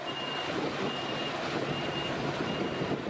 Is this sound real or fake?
real